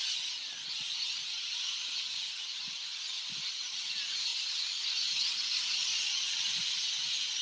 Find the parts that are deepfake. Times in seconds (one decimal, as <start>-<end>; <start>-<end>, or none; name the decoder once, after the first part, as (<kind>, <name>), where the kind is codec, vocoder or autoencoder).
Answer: none